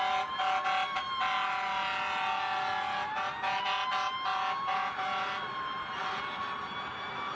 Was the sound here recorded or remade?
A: recorded